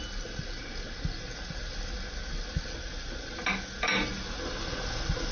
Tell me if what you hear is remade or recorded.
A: recorded